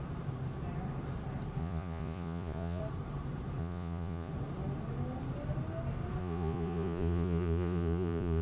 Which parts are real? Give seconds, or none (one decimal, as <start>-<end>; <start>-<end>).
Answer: 0.0-1.6; 2.8-3.6; 4.3-6.2

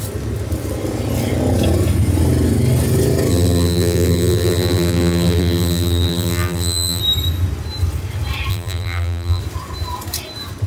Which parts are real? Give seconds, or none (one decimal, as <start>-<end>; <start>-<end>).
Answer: 0.0-3.3; 7.0-8.5; 9.4-10.7

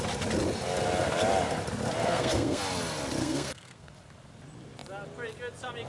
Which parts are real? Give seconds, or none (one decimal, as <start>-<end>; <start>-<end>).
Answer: 0.0-2.0; 2.6-3.2; 3.9-5.9

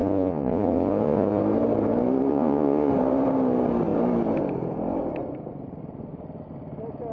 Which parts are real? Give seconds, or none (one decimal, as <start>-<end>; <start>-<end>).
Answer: 1.4-2.3; 2.9-7.1

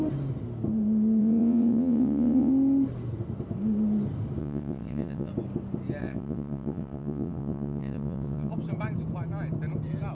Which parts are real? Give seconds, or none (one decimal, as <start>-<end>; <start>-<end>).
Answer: 0.0-1.2; 2.5-4.4; 5.3-6.0; 8.5-10.1